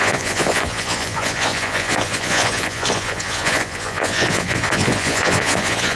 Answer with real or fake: fake